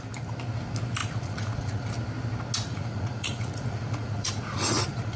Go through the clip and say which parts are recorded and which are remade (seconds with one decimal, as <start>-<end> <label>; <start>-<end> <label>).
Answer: 0.0-1.0 recorded; 1.0-1.9 remade; 1.9-2.7 recorded; 2.7-5.2 remade